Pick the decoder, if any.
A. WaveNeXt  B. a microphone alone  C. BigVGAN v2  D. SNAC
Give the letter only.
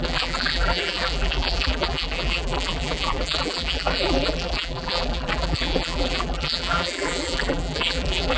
C